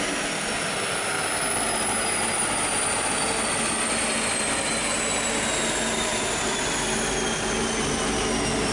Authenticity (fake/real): real